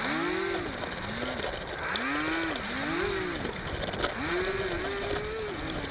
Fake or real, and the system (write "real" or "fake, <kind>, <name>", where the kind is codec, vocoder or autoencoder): real